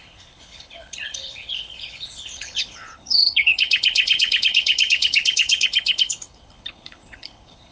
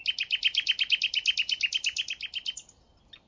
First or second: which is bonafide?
second